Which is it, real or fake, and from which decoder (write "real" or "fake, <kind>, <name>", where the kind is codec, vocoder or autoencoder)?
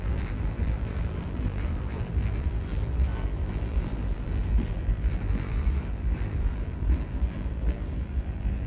fake, vocoder, BigVGAN v2